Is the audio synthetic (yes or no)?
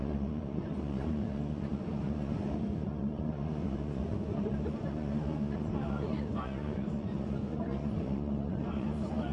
yes